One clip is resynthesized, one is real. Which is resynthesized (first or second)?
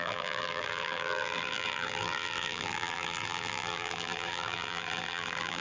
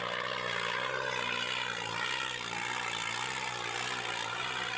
first